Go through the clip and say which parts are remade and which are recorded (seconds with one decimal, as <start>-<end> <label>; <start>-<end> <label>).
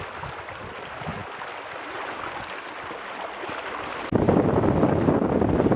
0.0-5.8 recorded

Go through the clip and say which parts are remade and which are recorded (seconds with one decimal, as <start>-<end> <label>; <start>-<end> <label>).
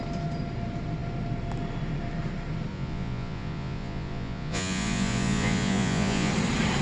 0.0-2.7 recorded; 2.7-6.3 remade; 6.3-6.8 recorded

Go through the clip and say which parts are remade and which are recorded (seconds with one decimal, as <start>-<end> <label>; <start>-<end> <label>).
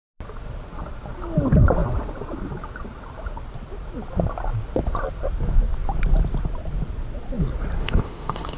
0.0-7.8 recorded; 7.8-8.6 remade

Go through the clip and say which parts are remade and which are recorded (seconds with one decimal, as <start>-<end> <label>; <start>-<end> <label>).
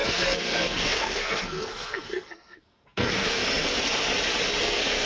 0.0-3.4 remade; 3.4-4.6 recorded; 4.6-5.1 remade